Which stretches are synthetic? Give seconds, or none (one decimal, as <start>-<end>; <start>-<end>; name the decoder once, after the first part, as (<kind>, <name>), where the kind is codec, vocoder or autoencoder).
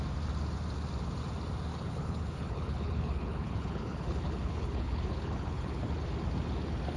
1.7-5.9 (codec, HILCodec)